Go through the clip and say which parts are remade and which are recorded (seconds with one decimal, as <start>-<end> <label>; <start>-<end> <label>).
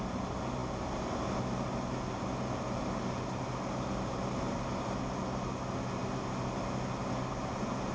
0.0-7.9 recorded